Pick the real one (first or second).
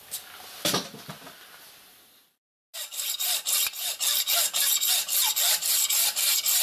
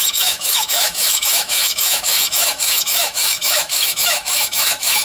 first